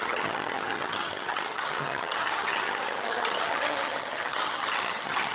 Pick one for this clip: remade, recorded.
remade